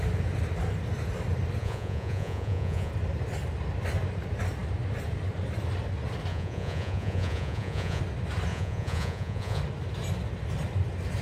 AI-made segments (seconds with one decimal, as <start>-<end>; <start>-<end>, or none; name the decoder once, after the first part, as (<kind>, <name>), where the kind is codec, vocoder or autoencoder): 1.6-2.9 (vocoder, Vocos); 6.3-8.0; 8.5-9.6